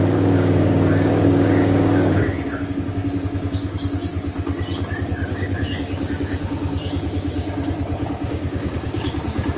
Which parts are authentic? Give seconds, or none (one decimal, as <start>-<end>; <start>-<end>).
4.1-5.3